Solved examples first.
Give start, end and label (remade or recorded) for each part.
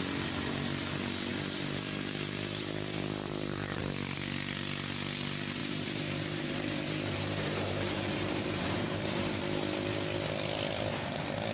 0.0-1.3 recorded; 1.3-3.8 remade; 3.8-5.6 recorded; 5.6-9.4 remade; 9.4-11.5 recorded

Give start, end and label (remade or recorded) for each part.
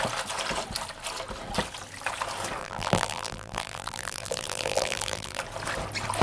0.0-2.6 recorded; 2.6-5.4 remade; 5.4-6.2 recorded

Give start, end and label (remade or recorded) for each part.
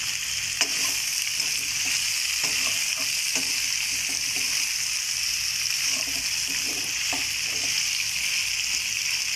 0.0-9.4 recorded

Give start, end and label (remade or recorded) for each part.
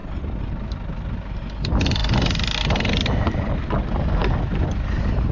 0.0-1.5 recorded; 1.5-2.0 remade; 2.0-3.8 recorded; 3.8-5.3 remade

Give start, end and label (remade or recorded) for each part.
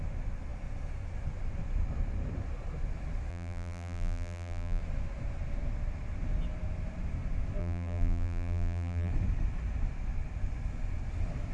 0.0-3.3 recorded; 3.3-4.8 remade; 4.8-7.6 recorded; 7.6-9.1 remade; 9.1-11.5 recorded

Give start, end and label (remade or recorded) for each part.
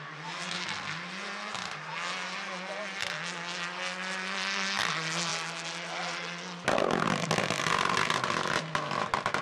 0.0-9.4 recorded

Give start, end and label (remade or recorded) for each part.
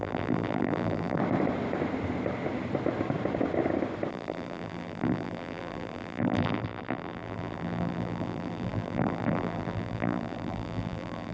0.0-1.2 remade; 1.2-4.1 recorded; 4.1-11.3 remade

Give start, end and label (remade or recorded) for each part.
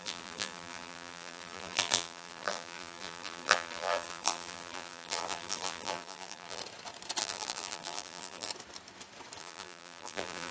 0.0-6.6 remade; 6.6-7.2 recorded; 7.2-8.5 remade; 8.5-9.4 recorded; 9.4-10.5 remade